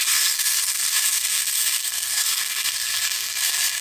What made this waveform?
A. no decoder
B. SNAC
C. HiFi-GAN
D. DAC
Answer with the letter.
B